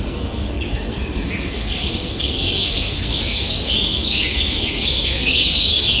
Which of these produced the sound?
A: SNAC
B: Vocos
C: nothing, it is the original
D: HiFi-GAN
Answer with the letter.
A